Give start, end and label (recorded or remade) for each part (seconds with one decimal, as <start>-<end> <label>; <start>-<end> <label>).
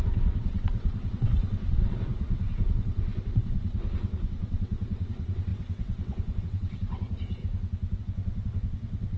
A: 0.0-7.4 remade; 7.4-8.0 recorded; 8.0-9.2 remade